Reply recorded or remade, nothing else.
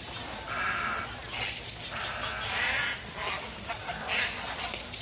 recorded